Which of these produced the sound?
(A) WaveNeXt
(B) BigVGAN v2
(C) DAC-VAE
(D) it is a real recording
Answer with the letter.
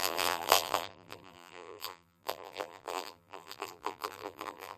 B